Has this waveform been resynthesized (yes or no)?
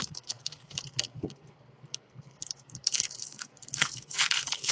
yes